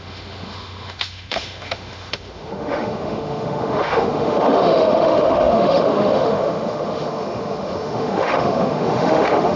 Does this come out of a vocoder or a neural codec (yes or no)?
yes